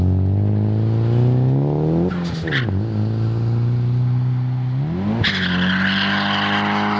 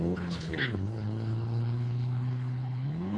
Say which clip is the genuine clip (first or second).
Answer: first